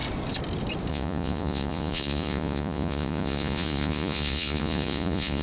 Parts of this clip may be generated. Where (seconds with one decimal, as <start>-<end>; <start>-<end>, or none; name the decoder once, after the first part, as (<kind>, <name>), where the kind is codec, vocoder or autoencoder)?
0.9-5.4 (vocoder, Vocos)